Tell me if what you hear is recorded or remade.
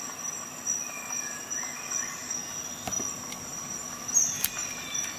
recorded